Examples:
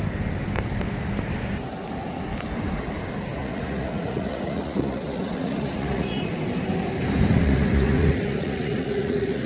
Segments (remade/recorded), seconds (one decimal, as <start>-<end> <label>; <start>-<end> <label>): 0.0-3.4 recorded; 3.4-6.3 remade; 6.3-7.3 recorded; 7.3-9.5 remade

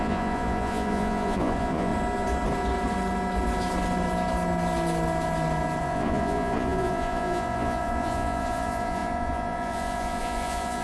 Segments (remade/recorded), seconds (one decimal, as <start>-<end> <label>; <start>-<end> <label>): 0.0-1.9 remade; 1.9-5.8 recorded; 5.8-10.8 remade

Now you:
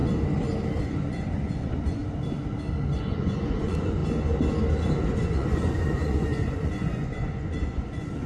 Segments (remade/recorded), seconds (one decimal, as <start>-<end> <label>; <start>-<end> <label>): 0.0-0.8 recorded; 0.8-2.0 remade; 2.0-3.0 recorded; 3.0-4.0 remade; 4.0-5.1 recorded; 5.1-8.3 remade

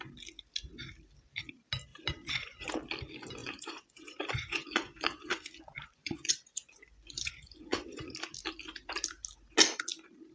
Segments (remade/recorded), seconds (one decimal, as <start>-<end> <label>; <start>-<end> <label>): 0.0-1.9 recorded; 1.9-2.7 remade; 2.7-3.4 recorded; 3.4-8.1 remade; 8.1-10.3 recorded